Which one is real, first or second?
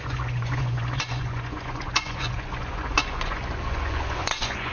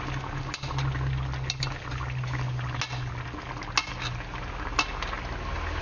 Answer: second